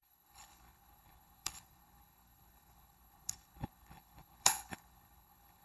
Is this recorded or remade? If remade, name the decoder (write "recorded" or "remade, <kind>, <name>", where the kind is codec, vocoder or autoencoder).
remade, codec, HILCodec